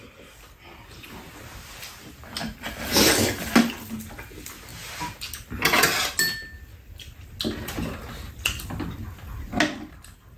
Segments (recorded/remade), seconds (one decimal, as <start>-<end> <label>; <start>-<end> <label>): 0.0-10.4 recorded

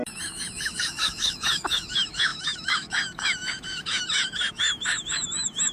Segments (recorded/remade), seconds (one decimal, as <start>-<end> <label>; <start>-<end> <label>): 0.0-5.7 remade

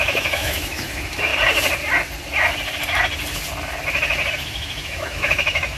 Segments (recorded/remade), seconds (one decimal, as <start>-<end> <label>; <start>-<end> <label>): 0.0-1.3 remade; 1.3-4.3 recorded; 4.3-5.8 remade

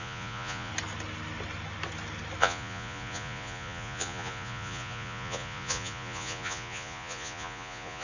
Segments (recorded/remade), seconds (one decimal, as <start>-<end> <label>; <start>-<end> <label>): 0.0-0.7 remade; 0.7-2.4 recorded; 2.4-8.0 remade

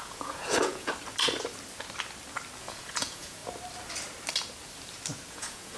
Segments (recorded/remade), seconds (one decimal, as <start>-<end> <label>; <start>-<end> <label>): 0.0-0.9 remade; 0.9-2.6 recorded; 2.6-3.4 remade; 3.4-5.3 recorded; 5.3-5.8 remade